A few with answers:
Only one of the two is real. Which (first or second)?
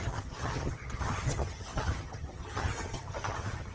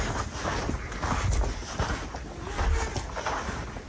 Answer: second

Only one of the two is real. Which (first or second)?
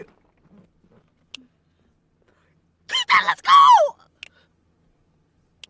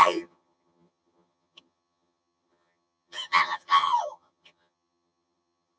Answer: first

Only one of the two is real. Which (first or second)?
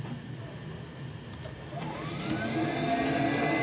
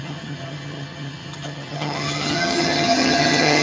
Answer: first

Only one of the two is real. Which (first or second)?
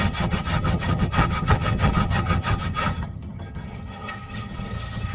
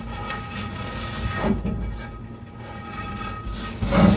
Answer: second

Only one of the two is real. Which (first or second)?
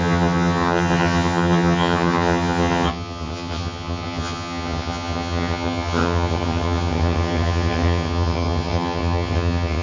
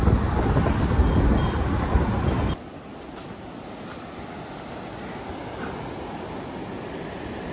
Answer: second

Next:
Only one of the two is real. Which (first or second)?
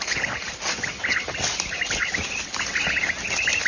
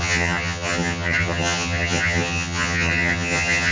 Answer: first